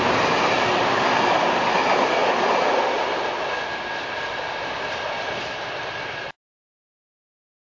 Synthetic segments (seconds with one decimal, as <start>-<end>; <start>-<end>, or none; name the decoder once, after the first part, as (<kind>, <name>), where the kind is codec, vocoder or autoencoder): none